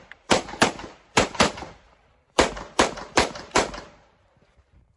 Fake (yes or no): yes